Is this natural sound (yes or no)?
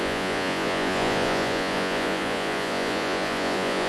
no